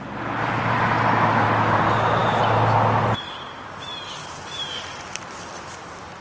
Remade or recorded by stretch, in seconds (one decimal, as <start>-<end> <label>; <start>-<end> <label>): 0.0-6.2 recorded